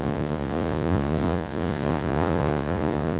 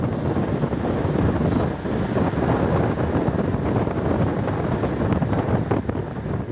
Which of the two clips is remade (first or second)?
first